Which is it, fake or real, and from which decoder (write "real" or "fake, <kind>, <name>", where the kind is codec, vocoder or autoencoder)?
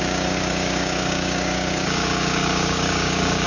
fake, codec, DAC